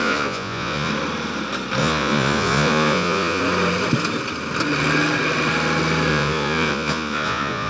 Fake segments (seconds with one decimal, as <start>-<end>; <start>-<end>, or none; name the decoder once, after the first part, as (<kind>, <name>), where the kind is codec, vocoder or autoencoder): 0.0-0.9 (vocoder, Vocos); 1.8-3.4; 6.1-7.7